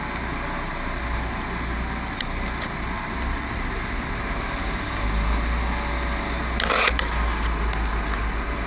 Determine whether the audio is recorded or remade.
recorded